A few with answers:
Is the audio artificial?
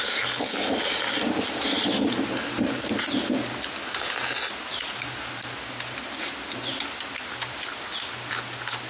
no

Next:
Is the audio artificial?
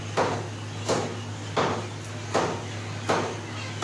no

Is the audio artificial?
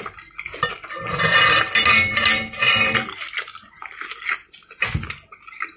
no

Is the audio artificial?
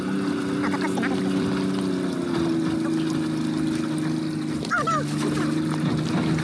no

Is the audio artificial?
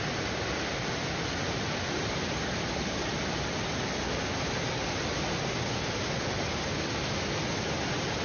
no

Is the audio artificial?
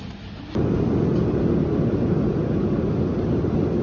no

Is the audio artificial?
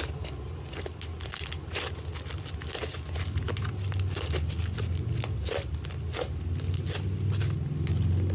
no